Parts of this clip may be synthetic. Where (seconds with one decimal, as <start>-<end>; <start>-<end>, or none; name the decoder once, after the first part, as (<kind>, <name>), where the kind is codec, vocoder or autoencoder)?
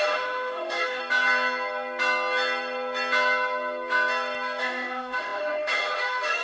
0.0-1.0 (autoencoder, DAC-VAE); 4.6-6.4